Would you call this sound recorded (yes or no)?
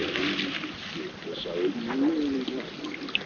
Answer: yes